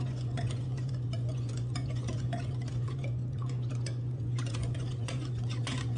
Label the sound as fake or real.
fake